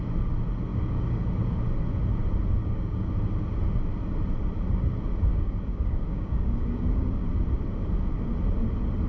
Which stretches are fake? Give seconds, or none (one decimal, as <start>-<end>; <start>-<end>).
0.7-1.2; 2.6-3.1; 5.3-7.2